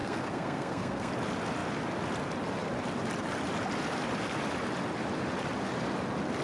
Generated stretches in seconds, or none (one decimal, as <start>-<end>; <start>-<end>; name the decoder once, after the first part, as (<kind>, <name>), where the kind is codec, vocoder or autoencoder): 0.0-1.1 (codec, SNAC)